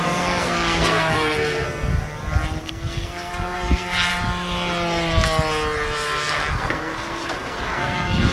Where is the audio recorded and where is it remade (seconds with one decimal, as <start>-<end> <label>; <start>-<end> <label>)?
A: 0.0-1.9 remade; 1.9-2.6 recorded; 2.6-4.1 remade; 4.1-6.5 recorded; 6.5-8.3 remade